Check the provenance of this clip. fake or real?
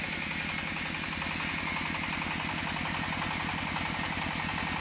real